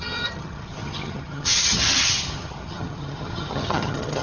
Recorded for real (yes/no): no